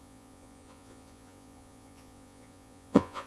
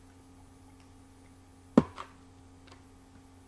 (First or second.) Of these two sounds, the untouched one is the second